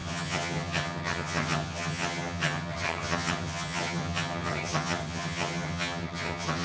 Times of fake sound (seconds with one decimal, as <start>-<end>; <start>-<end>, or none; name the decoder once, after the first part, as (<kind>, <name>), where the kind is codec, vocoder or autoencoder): 0.0-6.6 (vocoder, HiFi-GAN)